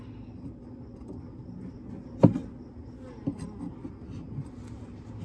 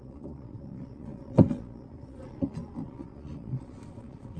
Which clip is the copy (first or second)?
second